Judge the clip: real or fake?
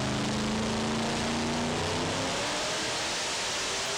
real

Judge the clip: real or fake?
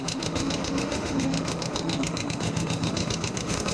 fake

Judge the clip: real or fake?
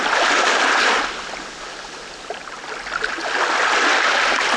real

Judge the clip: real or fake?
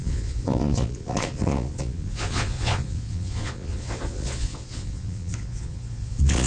fake